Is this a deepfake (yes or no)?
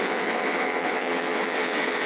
yes